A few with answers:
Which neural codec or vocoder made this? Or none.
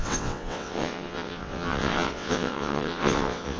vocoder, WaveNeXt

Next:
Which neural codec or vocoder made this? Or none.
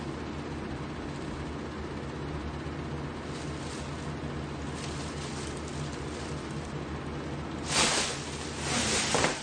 none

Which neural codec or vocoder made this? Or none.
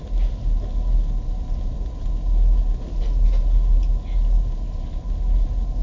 none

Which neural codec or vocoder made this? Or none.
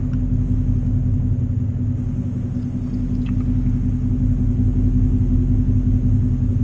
none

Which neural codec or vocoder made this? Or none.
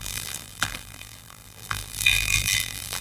vocoder, BigVGAN v2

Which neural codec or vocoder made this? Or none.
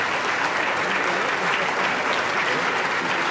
none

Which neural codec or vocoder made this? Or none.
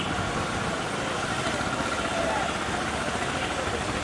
none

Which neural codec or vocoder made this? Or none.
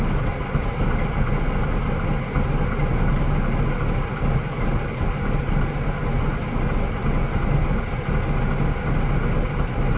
none